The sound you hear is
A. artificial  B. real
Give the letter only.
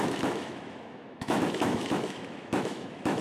A